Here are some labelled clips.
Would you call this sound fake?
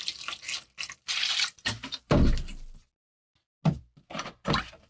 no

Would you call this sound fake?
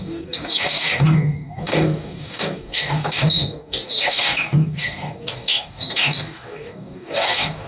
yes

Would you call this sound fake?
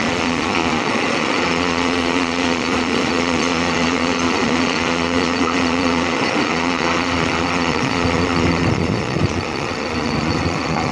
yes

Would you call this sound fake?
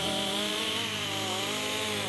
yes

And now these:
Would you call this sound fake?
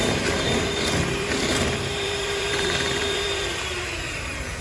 yes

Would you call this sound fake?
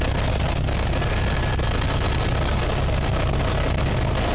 no